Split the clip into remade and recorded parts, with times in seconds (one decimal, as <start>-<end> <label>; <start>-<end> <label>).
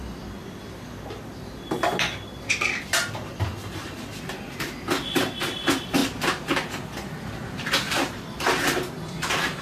0.0-0.4 recorded; 0.4-2.3 remade; 2.3-7.4 recorded; 7.4-8.2 remade; 8.2-9.6 recorded